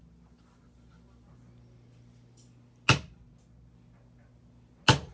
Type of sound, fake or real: real